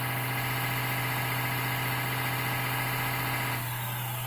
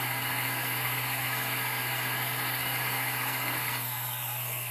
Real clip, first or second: first